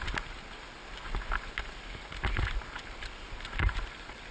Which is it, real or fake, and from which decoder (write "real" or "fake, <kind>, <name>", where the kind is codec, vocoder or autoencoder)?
real